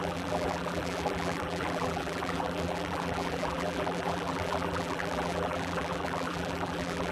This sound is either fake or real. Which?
fake